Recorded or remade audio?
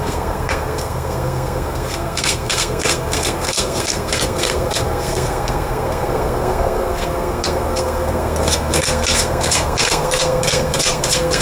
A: remade